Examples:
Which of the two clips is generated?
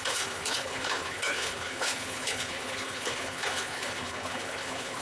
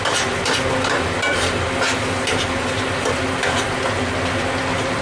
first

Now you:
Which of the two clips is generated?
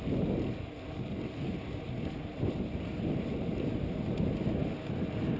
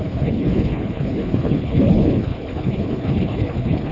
second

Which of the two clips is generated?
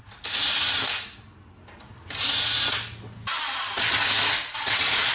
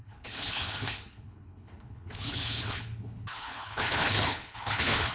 second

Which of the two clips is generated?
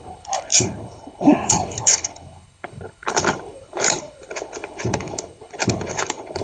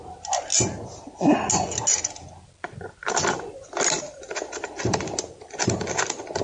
first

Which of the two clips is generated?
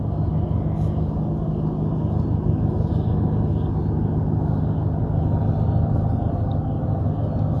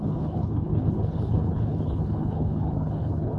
second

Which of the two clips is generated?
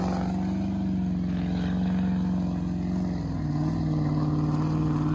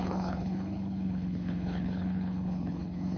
second